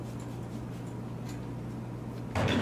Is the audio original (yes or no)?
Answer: yes